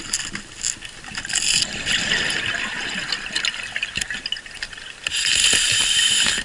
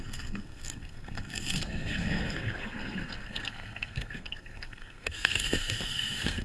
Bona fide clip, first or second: first